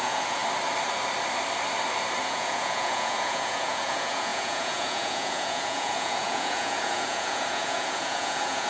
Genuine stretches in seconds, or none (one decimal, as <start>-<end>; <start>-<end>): 0.4-2.2